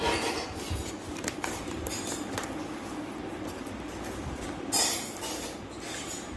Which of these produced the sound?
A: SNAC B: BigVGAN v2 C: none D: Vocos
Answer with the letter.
C